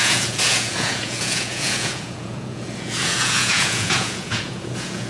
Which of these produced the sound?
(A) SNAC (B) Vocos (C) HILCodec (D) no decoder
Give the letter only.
B